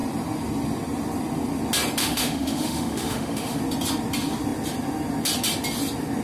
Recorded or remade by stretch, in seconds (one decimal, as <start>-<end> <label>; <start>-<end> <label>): 0.0-2.0 recorded; 2.0-3.6 remade; 3.6-6.2 recorded